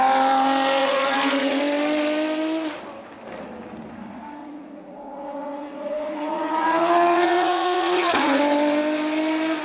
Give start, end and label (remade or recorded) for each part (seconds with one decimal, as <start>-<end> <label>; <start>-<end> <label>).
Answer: 0.0-0.8 recorded; 0.8-1.6 remade; 1.6-4.4 recorded; 4.4-8.4 remade; 8.4-9.6 recorded